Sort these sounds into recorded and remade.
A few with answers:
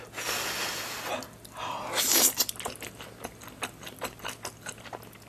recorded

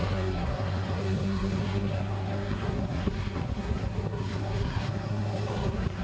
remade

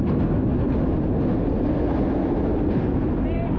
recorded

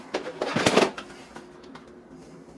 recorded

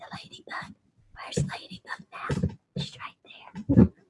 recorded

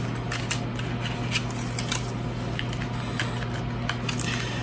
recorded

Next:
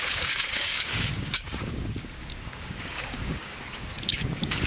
remade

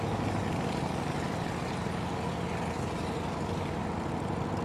recorded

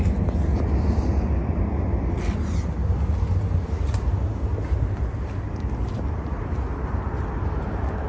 recorded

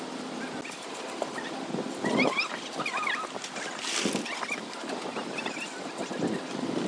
recorded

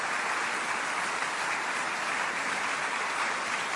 recorded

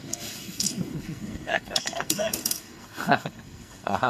remade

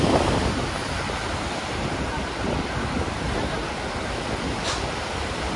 remade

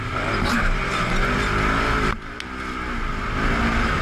recorded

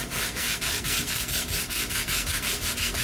remade